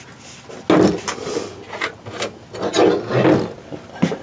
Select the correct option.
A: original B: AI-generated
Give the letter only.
A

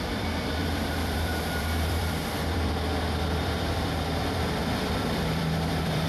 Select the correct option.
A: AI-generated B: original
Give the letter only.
A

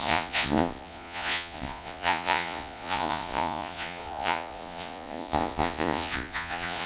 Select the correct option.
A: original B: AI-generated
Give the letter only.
B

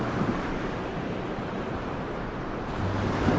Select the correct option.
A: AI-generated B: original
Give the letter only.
A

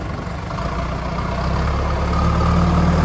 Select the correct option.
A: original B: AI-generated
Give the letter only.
A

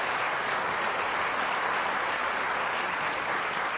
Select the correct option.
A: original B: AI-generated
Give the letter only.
A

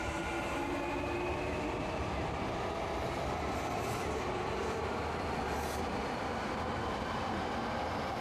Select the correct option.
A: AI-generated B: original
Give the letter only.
B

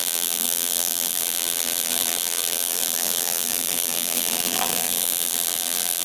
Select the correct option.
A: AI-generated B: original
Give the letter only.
A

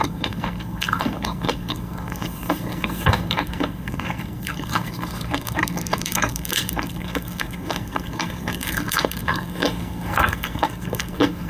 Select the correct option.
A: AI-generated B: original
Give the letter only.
A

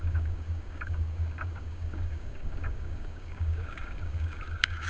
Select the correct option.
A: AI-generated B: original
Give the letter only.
A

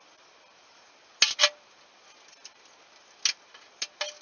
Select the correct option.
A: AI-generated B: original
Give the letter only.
B